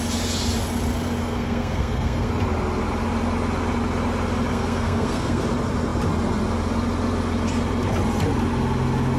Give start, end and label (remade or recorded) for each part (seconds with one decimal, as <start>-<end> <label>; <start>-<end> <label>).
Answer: 0.0-1.2 recorded; 1.2-2.3 remade; 2.3-4.5 recorded; 4.5-5.4 remade; 5.4-9.2 recorded